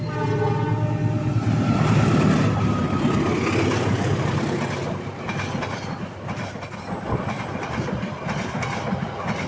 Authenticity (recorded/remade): recorded